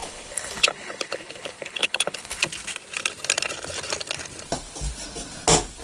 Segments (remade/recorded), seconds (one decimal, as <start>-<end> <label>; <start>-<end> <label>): 0.0-2.4 remade; 2.4-5.8 recorded